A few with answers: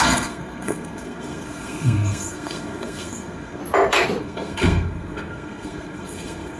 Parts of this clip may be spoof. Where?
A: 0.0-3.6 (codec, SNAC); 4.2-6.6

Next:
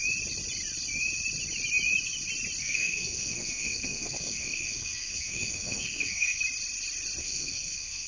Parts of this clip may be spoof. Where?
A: 2.6-6.4 (codec, SNAC); 7.2-8.1

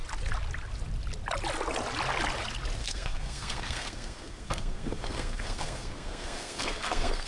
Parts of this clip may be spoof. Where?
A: 2.8-7.3 (codec, SNAC)

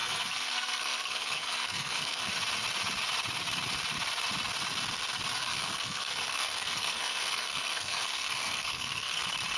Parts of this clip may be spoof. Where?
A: 0.0-2.3 (codec, SNAC); 5.4-9.2

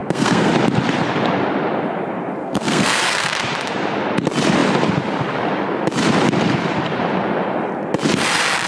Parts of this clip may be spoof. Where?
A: 0.0-0.5 (codec, SNAC); 2.4-3.4